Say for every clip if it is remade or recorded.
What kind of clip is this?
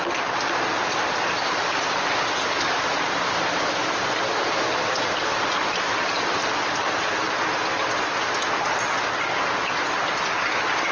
recorded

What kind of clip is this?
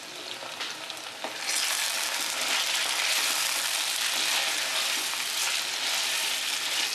recorded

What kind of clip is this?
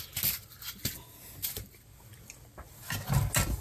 recorded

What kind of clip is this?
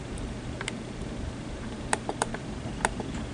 remade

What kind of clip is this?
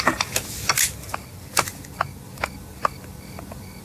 recorded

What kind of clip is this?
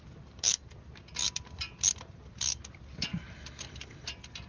recorded